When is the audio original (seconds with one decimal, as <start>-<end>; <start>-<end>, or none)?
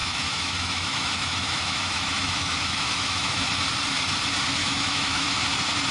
3.5-4.6; 5.4-5.9